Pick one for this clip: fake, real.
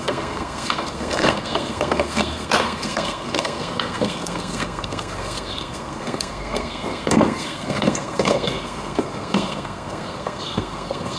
fake